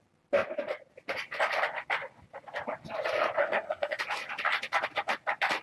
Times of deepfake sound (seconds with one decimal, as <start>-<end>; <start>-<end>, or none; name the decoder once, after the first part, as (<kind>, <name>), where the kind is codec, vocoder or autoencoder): 3.4-4.0 (codec, SNAC)